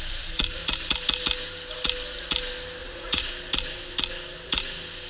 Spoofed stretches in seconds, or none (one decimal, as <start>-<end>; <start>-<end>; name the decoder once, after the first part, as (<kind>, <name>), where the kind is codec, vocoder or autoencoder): 2.8-3.3 (vocoder, Vocos)